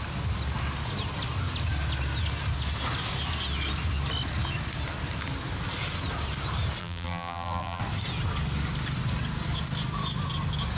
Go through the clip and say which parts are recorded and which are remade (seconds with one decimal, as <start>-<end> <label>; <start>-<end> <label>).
0.0-6.8 recorded; 6.8-7.8 remade; 7.8-10.8 recorded